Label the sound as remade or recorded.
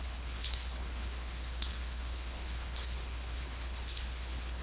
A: remade